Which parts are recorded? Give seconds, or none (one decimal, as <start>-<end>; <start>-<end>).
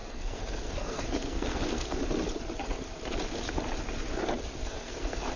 2.0-4.6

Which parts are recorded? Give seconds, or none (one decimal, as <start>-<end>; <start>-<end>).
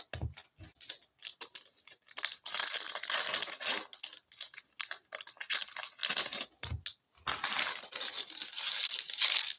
0.0-9.6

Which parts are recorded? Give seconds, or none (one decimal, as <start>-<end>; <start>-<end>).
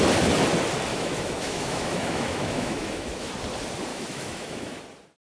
0.0-0.9; 3.3-3.9; 4.8-5.3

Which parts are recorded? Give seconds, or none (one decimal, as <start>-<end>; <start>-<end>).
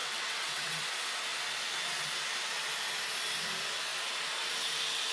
0.8-5.1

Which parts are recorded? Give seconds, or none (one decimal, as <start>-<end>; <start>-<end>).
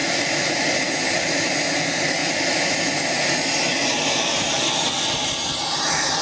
0.0-6.2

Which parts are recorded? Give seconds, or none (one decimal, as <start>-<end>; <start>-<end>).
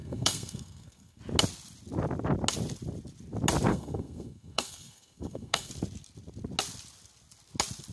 1.2-3.7; 5.7-7.9